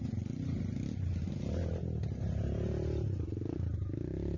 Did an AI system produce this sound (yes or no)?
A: no